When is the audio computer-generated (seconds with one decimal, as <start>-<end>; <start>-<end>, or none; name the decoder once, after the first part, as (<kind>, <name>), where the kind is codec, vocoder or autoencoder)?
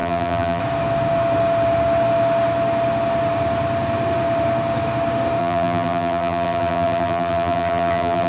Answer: 0.0-0.6 (vocoder, BigVGAN v2); 5.4-8.3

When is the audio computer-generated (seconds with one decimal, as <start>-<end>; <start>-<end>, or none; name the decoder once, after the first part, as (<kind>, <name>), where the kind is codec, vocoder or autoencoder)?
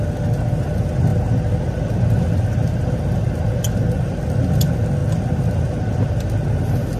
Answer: none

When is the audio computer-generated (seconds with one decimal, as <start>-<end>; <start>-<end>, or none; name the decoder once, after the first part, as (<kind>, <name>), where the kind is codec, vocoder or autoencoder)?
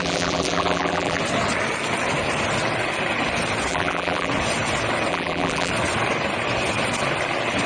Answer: 0.0-1.2 (vocoder, BigVGAN v2); 3.7-4.3; 5.1-5.7